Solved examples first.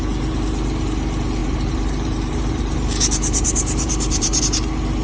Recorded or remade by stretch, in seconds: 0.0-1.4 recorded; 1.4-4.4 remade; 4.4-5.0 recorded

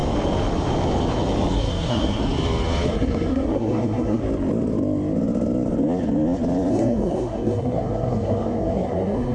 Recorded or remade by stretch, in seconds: 0.0-1.5 recorded; 1.5-2.2 remade; 2.2-2.9 recorded; 2.9-4.2 remade; 4.2-6.7 recorded; 6.7-9.3 remade

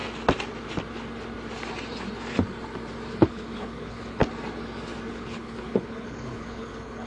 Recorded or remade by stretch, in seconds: 0.0-3.1 recorded; 3.1-4.2 remade; 4.2-5.1 recorded; 5.1-7.1 remade